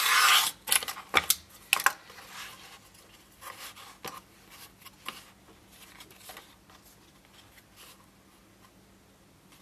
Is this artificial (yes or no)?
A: no